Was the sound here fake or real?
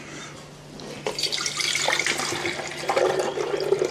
real